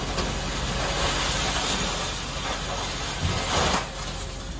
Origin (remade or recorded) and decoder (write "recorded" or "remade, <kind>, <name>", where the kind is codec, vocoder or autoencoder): recorded